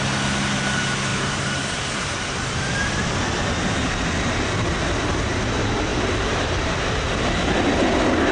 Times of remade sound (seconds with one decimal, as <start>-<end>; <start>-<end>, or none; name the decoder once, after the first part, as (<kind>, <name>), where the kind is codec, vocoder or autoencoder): 1.1-2.6 (vocoder, BigVGAN v2); 5.9-6.9